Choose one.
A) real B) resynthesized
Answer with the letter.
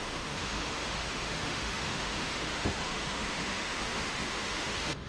B